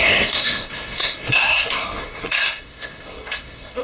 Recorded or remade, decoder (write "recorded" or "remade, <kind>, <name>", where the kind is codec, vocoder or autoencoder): remade, codec, SNAC